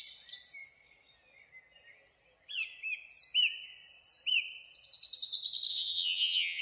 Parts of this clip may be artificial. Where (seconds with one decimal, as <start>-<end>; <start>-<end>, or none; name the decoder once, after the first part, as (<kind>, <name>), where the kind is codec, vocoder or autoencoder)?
5.7-6.6 (vocoder, HiFi-GAN)